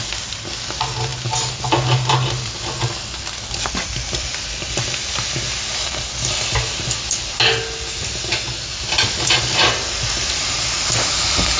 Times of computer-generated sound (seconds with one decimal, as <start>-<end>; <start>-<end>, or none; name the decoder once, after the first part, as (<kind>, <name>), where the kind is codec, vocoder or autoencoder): none

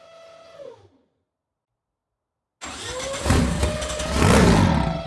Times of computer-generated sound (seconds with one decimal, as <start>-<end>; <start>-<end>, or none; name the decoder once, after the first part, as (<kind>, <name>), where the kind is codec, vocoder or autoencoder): none

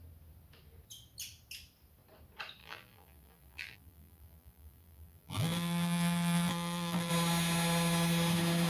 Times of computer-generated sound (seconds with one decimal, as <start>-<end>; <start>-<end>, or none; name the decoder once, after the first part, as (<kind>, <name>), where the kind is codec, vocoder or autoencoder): 2.6-7.1 (vocoder, BigVGAN v2)

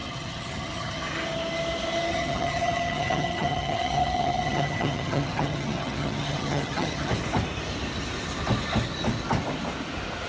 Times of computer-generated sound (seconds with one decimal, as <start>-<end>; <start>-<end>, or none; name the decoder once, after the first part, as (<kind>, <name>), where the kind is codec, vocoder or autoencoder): 0.0-1.0 (vocoder, HiFi-GAN); 2.1-7.1

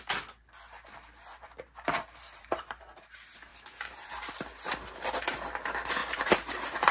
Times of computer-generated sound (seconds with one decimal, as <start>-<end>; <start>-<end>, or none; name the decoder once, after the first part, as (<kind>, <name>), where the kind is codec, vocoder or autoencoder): 1.3-2.8 (vocoder, BigVGAN v2); 3.5-4.7; 6.0-6.9

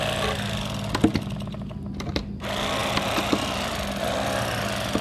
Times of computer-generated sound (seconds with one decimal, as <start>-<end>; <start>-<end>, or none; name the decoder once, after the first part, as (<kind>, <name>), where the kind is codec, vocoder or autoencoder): none